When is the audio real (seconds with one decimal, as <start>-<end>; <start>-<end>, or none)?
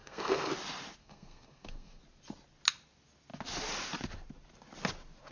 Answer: 0.5-1.0; 2.0-5.3